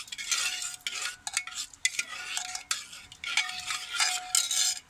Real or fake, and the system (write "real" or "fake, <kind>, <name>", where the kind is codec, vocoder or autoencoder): real